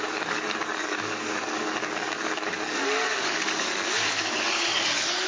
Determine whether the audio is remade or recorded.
remade